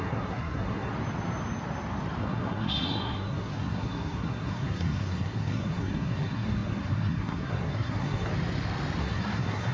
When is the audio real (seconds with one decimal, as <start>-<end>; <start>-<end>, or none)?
0.9-2.2; 8.3-9.0

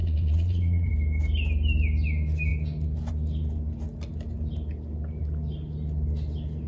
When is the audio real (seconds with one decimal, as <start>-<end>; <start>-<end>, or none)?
0.9-6.7

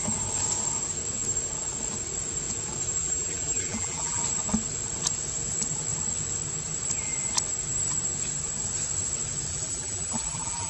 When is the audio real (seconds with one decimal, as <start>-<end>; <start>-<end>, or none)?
0.0-3.0; 4.2-9.5

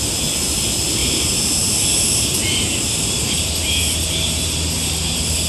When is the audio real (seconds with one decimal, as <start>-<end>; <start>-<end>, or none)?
0.0-1.0; 3.7-5.5

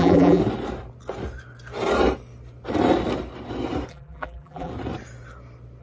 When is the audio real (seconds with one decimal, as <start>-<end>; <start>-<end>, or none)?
0.4-3.9; 4.7-5.8

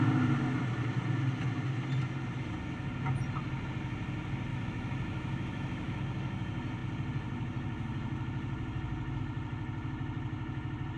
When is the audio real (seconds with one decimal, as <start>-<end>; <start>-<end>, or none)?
0.0-4.5; 6.0-11.0